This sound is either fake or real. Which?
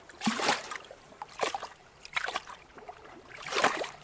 fake